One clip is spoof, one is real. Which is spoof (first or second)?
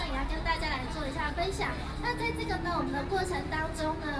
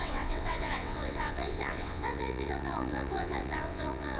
second